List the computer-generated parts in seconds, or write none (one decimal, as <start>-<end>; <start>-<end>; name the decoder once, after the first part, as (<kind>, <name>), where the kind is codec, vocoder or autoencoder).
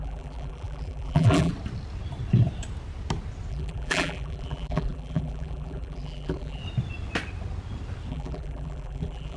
0.0-1.5 (vocoder, BigVGAN v2); 3.5-6.6; 8.1-9.4